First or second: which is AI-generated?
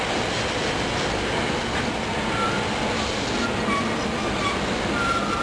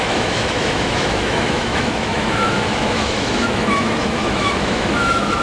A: second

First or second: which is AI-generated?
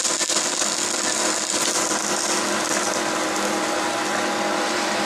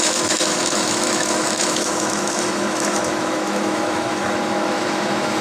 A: second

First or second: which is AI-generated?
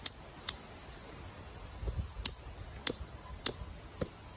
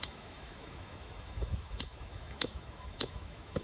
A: second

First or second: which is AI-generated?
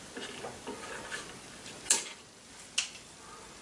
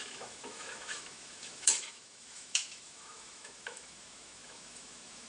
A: second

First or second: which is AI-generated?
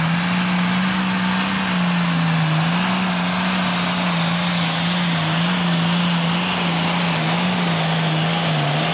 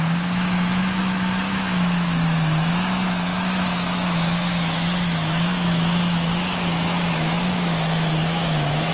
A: second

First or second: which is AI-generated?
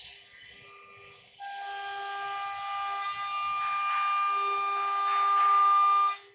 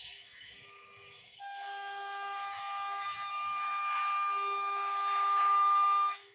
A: second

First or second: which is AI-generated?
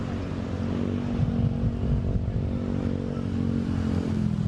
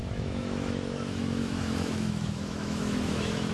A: second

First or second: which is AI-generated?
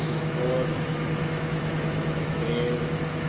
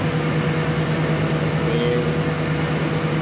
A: first